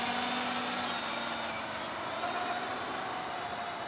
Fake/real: real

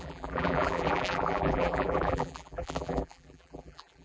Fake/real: fake